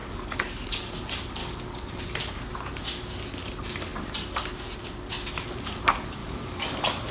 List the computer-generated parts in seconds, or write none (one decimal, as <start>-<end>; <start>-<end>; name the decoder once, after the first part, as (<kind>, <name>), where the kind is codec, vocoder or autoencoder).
0.0-0.9 (codec, DAC); 1.4-2.0; 6.2-7.1